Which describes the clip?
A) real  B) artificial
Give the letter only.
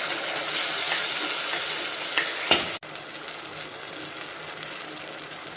A